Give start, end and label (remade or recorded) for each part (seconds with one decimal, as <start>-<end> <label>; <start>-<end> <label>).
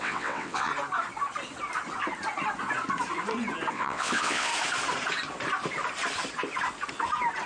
0.0-0.7 remade; 0.7-3.7 recorded; 3.7-4.5 remade; 4.5-7.5 recorded